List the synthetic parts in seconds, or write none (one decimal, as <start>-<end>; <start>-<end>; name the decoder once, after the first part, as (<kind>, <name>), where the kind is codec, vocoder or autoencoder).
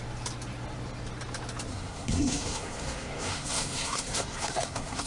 1.7-5.1 (codec, SNAC)